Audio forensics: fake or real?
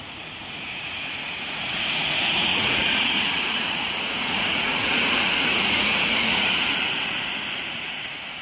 fake